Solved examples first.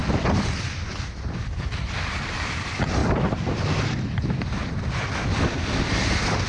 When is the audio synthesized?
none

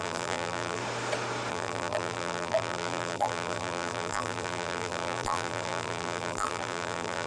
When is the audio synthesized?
0.0-0.8 (vocoder, BigVGAN v2); 1.5-7.3

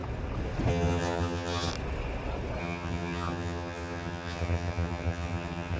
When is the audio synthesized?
0.7-1.7 (vocoder, HiFi-GAN); 2.6-5.8

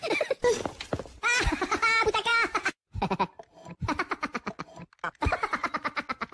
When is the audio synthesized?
none

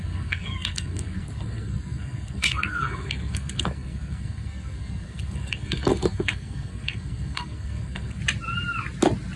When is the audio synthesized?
0.0-8.2 (codec, SNAC)

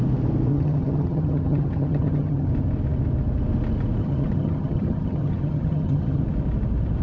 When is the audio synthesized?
0.5-2.5 (vocoder, HiFi-GAN); 4.0-6.2

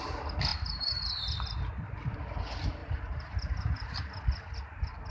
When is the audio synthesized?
none

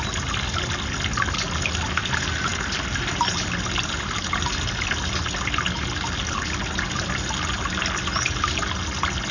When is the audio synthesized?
none